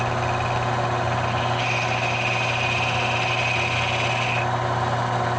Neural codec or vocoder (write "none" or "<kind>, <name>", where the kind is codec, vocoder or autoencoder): none